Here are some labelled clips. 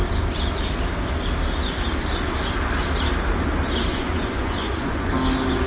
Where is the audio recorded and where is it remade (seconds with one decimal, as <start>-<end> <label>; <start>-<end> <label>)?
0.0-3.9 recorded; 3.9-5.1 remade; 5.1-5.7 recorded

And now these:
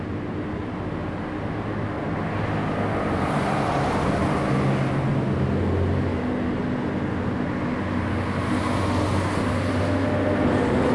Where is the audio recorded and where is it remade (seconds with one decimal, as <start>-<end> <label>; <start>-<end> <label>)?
0.0-10.9 recorded

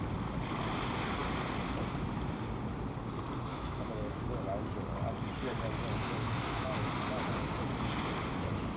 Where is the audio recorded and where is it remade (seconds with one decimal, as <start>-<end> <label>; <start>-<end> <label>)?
0.0-3.5 recorded; 3.5-4.5 remade; 4.5-6.0 recorded; 6.0-6.9 remade; 6.9-8.8 recorded

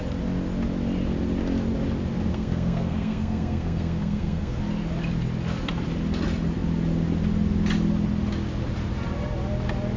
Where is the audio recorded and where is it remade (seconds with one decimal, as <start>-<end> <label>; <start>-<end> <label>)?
0.0-2.3 recorded; 2.3-4.6 remade; 4.6-10.0 recorded